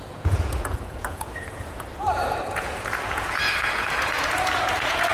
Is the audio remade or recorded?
remade